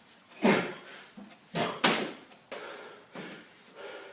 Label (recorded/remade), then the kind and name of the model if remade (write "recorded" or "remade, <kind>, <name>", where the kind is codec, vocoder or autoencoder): recorded